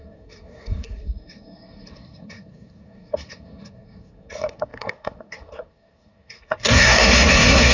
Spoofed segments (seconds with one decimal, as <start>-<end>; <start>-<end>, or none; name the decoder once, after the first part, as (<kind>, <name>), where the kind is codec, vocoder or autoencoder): 0.0-7.7 (codec, SNAC)

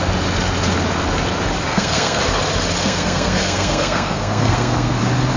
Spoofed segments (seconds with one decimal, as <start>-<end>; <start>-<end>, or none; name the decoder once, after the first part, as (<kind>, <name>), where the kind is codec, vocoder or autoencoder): 1.7-2.2 (codec, SNAC); 2.8-5.0